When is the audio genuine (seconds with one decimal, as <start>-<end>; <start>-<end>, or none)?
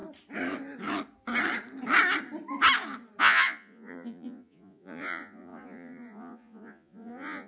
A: 0.0-3.2